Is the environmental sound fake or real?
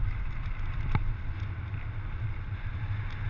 real